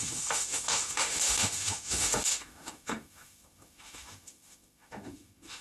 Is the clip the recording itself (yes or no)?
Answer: no